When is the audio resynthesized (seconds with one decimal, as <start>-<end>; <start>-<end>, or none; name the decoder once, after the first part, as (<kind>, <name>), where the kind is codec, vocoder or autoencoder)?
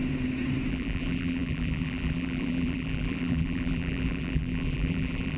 0.7-5.4 (vocoder, BigVGAN v2)